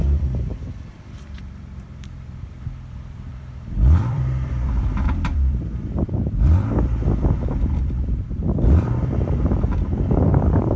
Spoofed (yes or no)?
yes